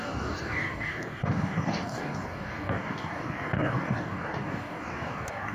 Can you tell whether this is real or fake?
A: fake